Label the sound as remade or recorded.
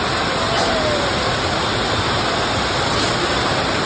recorded